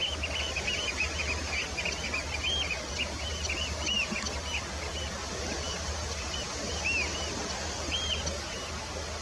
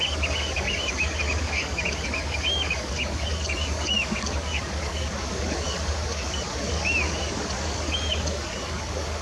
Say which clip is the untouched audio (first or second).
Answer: first